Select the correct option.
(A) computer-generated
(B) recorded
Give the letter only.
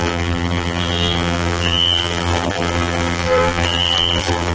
A